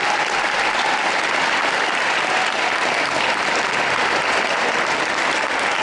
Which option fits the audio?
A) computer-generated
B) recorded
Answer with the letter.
B